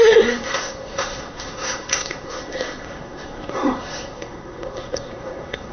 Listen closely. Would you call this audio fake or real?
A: fake